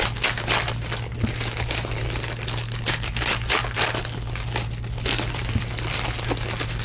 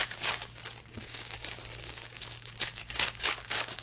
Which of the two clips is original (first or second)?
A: first